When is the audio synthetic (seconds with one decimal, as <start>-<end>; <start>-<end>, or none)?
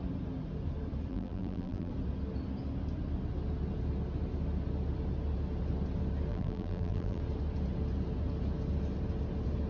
1.1-1.9; 6.3-7.2